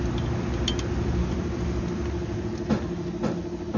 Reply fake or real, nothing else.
real